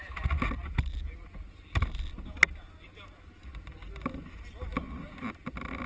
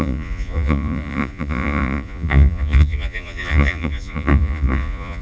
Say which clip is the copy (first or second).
second